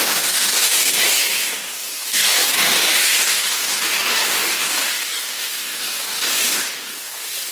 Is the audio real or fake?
fake